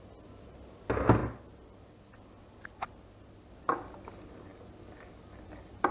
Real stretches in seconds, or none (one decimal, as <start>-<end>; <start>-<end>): 0.0-5.9